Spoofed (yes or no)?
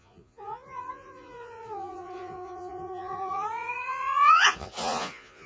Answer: yes